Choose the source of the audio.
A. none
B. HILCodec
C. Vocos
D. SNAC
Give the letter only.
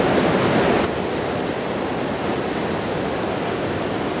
A